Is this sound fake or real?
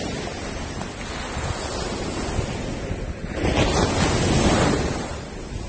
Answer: real